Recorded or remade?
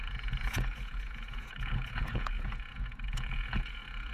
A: remade